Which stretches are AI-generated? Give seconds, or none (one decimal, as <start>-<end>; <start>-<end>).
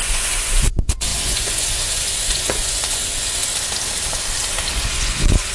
0.0-3.4; 4.7-5.5